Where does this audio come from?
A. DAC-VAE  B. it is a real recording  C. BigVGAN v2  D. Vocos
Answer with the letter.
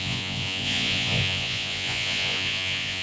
D